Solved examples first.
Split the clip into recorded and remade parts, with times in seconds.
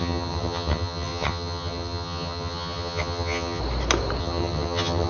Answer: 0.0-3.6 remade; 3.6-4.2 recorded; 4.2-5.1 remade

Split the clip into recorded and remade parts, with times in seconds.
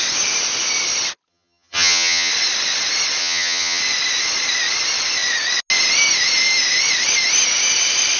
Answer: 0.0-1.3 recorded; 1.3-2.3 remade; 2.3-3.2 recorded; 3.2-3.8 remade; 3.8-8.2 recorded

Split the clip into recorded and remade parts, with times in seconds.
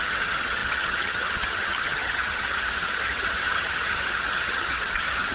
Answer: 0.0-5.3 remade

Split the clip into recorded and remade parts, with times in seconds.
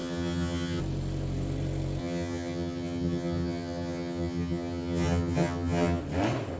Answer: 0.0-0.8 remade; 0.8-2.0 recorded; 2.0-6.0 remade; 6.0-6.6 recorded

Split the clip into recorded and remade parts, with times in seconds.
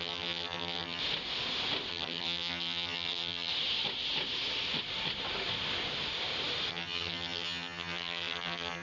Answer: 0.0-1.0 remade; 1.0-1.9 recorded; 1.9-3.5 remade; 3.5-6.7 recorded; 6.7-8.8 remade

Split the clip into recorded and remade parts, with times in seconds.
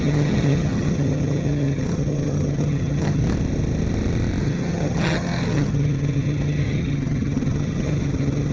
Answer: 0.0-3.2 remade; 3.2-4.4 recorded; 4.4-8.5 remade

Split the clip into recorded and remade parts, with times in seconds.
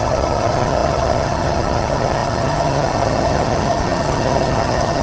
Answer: 0.0-5.0 remade